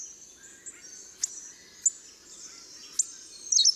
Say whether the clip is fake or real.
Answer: real